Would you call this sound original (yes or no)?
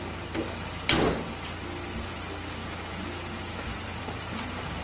yes